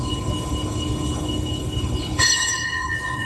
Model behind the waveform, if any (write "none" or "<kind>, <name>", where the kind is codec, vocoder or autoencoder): codec, HILCodec